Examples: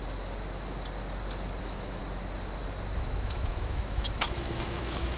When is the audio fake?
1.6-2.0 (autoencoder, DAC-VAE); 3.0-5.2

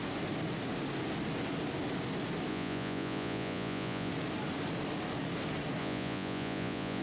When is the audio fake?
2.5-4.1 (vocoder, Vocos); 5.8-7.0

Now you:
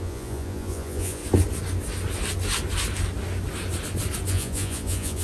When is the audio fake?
0.0-1.2 (vocoder, Vocos); 4.3-5.2

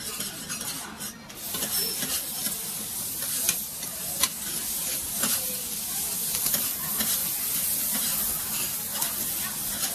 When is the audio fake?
none